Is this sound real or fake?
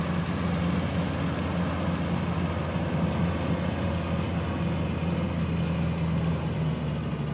real